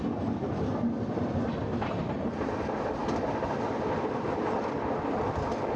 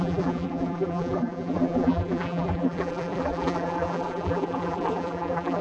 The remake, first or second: second